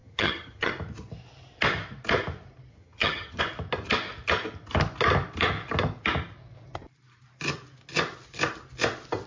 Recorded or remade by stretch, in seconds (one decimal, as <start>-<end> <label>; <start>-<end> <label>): 0.0-0.7 remade; 0.7-2.7 recorded; 2.7-3.4 remade; 3.4-9.3 recorded